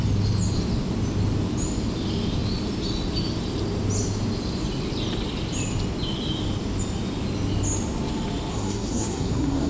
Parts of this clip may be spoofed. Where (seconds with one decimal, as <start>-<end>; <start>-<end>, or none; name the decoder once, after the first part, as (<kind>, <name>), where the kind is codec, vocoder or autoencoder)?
8.5-9.7 (codec, SNAC)